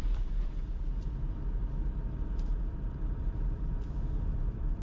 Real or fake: fake